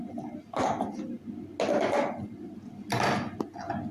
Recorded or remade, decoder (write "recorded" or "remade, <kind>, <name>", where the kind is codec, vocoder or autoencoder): recorded